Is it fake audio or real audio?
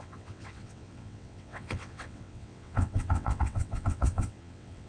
fake